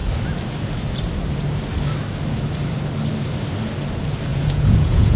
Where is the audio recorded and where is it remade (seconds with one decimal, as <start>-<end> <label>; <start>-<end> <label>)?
0.0-4.3 recorded; 4.3-5.2 remade